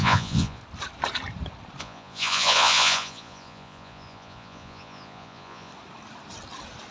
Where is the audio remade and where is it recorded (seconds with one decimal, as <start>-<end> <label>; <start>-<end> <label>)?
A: 0.0-0.6 remade; 0.6-1.8 recorded; 1.8-5.7 remade; 5.7-6.9 recorded